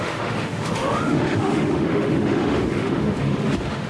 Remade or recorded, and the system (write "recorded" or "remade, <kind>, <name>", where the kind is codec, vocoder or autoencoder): remade, autoencoder, DAC-VAE